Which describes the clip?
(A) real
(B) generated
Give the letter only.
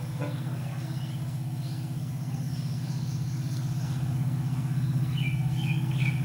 B